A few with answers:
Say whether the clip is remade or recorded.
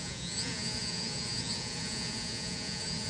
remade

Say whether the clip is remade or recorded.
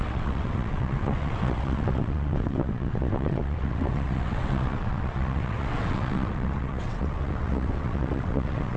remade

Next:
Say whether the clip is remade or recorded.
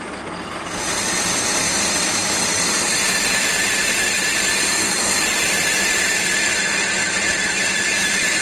remade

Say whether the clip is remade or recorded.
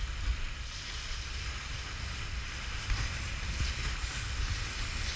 recorded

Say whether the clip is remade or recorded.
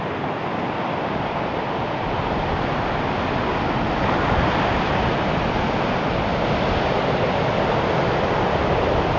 recorded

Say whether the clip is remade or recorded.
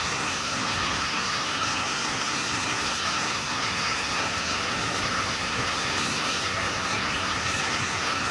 remade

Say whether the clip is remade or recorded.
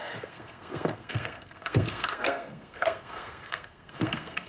remade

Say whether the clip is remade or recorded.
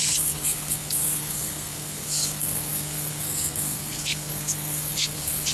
remade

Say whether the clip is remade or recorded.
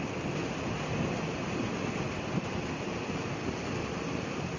recorded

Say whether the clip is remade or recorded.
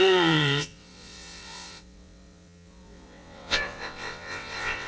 remade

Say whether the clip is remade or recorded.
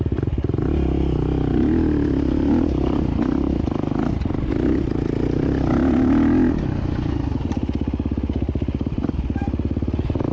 recorded